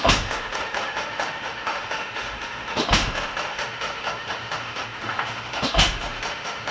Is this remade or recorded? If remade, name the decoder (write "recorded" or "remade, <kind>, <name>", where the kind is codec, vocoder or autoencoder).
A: remade, autoencoder, DAC-VAE